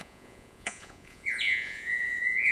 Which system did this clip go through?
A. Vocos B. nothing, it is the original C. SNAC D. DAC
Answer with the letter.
A